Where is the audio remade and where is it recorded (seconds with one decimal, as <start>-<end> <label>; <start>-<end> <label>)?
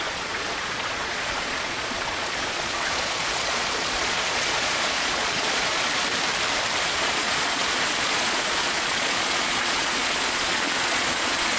0.0-5.8 remade; 5.8-6.8 recorded; 6.8-11.6 remade